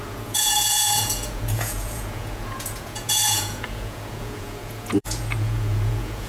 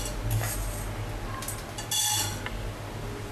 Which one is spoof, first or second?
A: first